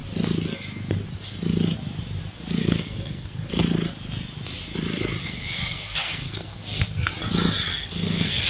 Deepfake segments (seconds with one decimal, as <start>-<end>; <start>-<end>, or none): 2.6-3.5; 5.2-7.1; 7.7-8.5